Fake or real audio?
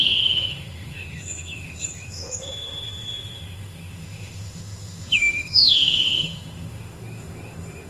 fake